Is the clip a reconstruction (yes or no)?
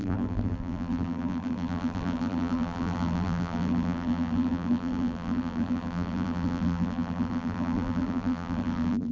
yes